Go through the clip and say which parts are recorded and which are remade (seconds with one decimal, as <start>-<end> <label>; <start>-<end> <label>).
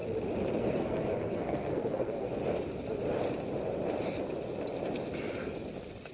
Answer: 0.0-0.6 recorded; 0.6-2.3 remade; 2.3-6.1 recorded